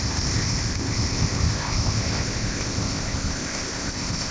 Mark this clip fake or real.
fake